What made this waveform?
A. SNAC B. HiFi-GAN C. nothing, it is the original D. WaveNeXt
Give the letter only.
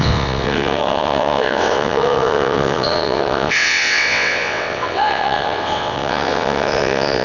D